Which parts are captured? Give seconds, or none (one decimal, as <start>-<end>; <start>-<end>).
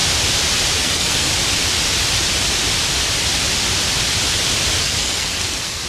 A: 0.0-0.8; 1.3-4.8